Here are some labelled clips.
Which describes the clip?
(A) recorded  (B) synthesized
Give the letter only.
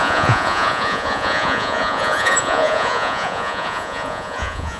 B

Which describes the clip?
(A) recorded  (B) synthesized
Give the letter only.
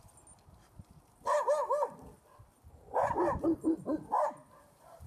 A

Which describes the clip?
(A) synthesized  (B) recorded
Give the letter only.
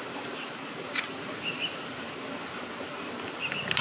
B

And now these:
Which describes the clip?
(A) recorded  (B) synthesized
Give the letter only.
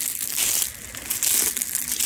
A